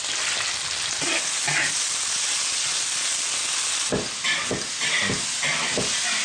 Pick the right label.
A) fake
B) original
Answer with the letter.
B